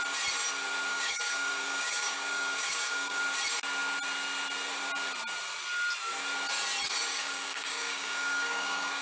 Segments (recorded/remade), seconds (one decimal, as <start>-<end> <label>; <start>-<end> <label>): 0.0-0.9 recorded; 0.9-3.2 remade; 3.2-7.1 recorded; 7.1-9.0 remade